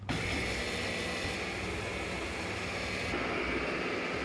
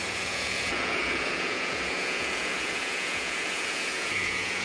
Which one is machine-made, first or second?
second